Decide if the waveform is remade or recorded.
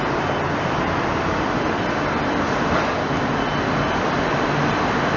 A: recorded